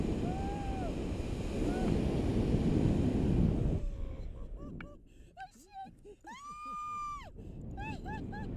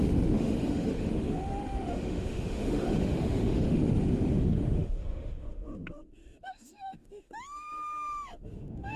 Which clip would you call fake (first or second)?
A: second